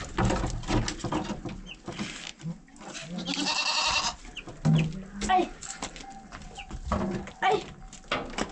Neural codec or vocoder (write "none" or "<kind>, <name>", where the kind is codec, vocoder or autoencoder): none